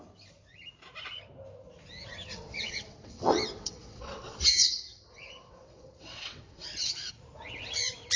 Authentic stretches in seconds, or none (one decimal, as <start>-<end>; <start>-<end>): 0.0-2.3; 7.1-8.2